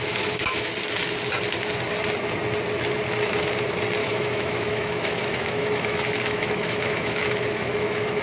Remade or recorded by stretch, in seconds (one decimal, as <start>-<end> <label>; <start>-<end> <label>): 0.0-0.7 remade; 0.7-4.0 recorded; 4.0-8.2 remade